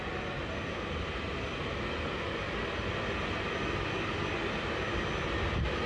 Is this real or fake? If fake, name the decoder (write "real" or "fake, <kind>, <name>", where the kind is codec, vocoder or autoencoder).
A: real